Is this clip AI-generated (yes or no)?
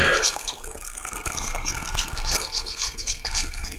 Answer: yes